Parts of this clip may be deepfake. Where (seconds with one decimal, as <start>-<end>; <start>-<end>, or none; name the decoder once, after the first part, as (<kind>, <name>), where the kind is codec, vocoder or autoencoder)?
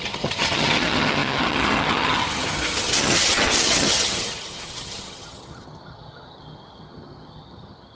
0.0-7.9 (vocoder, HiFi-GAN)